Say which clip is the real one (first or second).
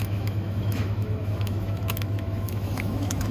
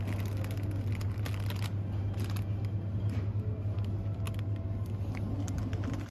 second